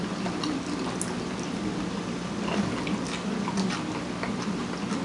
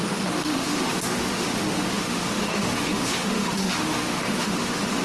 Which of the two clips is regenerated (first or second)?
second